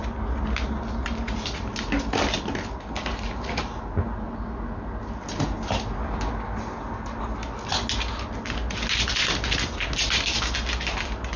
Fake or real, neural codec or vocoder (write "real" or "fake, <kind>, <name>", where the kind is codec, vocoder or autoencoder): real